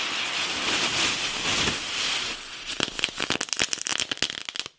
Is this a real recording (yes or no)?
yes